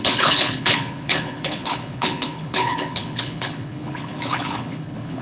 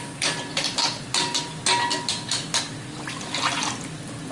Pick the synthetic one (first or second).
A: first